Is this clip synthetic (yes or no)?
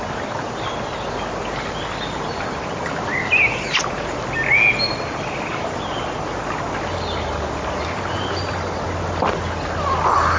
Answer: no